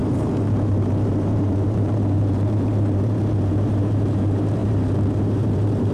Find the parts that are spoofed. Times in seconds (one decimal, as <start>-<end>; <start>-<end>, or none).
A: 0.0-5.9